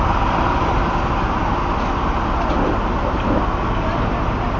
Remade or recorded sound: recorded